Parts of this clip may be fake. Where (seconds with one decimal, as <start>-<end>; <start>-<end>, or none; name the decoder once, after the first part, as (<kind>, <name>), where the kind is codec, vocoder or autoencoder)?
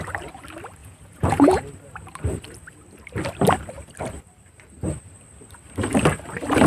0.8-1.6 (vocoder, Vocos)